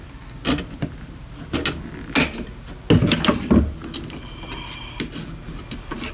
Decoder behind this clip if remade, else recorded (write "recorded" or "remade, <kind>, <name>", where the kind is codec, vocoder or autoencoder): recorded